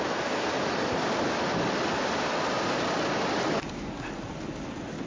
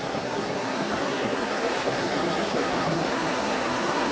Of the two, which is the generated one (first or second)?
second